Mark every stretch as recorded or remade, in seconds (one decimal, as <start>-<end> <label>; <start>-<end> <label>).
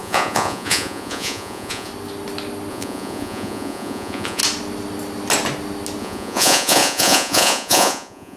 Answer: 0.0-1.9 remade; 1.9-2.7 recorded; 2.7-4.4 remade; 4.4-6.0 recorded; 6.0-8.4 remade